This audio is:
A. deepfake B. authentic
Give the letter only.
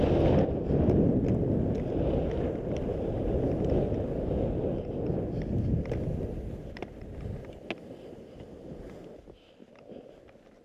B